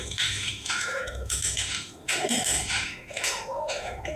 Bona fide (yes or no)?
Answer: no